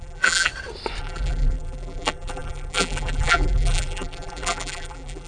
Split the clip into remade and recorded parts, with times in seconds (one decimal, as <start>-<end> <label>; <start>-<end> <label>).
0.0-0.5 remade; 0.5-1.0 recorded; 1.0-5.3 remade